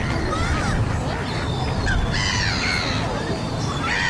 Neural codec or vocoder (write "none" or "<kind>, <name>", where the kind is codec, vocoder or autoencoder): none